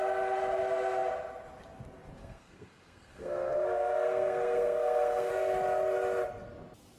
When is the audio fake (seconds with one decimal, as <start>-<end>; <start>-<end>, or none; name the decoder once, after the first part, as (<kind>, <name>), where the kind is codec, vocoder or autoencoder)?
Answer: 2.2-5.3 (codec, SNAC)